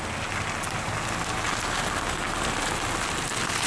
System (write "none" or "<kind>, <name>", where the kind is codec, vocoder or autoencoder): none